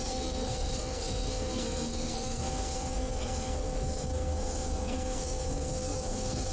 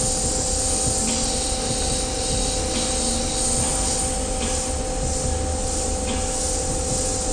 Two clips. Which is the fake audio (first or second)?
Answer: first